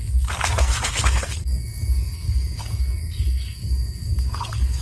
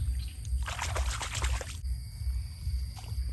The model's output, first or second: first